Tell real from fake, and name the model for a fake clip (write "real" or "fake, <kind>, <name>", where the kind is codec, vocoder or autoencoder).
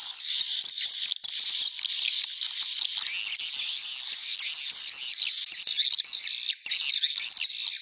real